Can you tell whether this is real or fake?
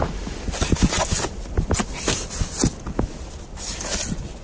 real